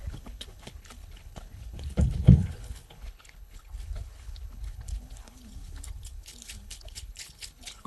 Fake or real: fake